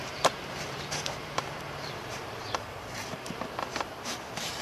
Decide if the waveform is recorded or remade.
remade